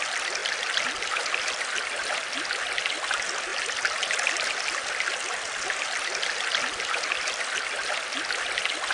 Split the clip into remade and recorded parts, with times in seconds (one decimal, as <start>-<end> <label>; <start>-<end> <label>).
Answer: 0.0-8.9 recorded